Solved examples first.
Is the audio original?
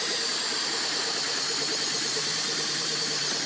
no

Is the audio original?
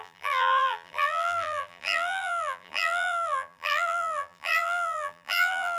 no